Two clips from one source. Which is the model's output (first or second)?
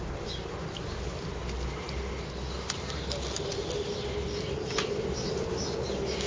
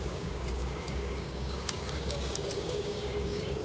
second